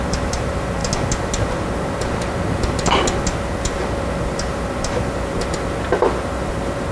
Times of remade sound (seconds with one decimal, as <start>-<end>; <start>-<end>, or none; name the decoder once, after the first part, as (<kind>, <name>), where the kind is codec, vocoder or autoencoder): 0.0-0.8 (vocoder, BigVGAN v2); 4.0-6.9